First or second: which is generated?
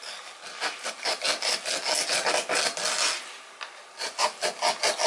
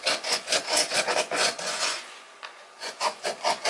second